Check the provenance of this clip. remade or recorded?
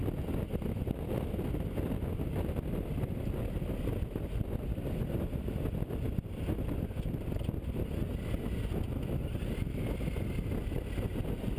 recorded